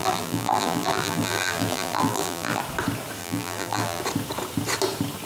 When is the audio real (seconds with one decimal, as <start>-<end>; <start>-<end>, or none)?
2.6-3.2; 4.0-5.3